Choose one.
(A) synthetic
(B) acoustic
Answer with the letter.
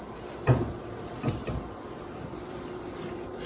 A